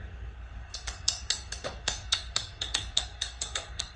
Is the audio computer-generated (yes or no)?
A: yes